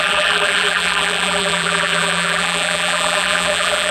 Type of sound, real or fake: fake